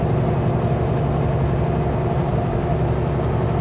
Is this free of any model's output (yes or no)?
yes